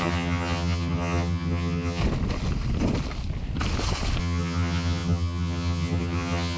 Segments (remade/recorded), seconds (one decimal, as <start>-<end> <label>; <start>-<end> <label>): 0.0-2.0 remade; 2.0-4.2 recorded; 4.2-6.6 remade